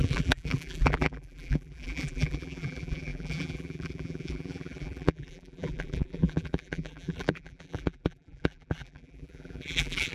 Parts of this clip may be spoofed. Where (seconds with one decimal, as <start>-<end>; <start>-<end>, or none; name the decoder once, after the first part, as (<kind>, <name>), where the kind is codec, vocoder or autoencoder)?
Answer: 0.0-10.1 (vocoder, BigVGAN v2)